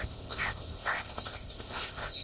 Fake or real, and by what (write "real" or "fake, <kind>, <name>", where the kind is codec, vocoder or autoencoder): fake, codec, ZipCodec